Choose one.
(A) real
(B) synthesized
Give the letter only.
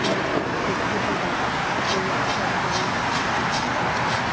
A